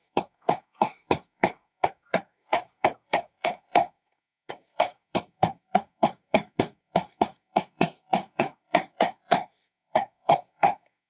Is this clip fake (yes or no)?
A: yes